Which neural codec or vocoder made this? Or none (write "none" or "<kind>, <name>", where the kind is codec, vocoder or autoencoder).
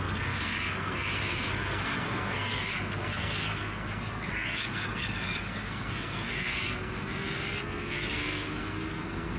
codec, SNAC